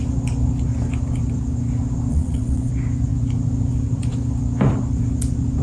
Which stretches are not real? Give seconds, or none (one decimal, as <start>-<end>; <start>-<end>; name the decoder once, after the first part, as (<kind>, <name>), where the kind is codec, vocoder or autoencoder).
2.1-2.7 (vocoder, WaveNeXt)

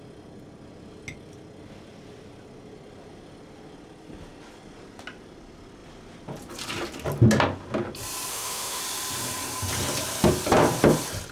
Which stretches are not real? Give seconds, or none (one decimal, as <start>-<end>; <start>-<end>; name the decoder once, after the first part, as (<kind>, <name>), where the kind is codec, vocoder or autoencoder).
8.3-8.8 (autoencoder, DAC-VAE)

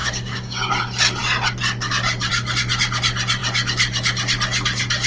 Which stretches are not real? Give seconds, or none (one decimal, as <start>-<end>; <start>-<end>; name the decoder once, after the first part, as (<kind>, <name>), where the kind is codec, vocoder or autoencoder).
0.0-0.7 (codec, DAC)

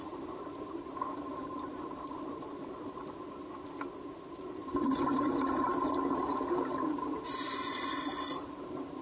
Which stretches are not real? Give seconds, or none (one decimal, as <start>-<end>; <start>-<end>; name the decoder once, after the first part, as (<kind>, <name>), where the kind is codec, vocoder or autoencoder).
0.0-3.0 (vocoder, BigVGAN v2); 4.0-9.0

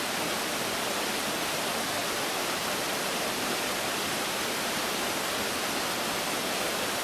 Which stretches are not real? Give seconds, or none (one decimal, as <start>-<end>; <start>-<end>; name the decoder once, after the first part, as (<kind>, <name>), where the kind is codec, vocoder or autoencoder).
2.0-2.9 (vocoder, BigVGAN v2)

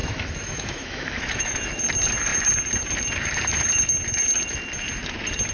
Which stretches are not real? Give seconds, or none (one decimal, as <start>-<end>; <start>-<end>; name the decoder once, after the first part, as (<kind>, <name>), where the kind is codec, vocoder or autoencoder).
0.0-1.8 (autoencoder, DAC-VAE)